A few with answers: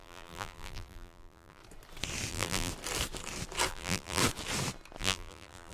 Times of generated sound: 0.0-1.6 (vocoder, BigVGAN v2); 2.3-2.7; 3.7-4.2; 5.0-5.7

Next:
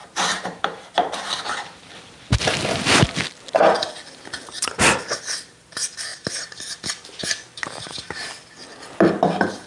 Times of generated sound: 0.0-1.9 (vocoder, BigVGAN v2); 6.1-6.6; 7.2-8.2

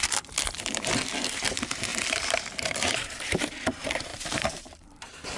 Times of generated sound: 1.9-3.5 (vocoder, BigVGAN v2); 4.1-5.4

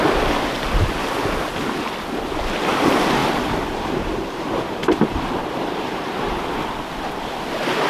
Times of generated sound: 3.2-6.4 (vocoder, BigVGAN v2)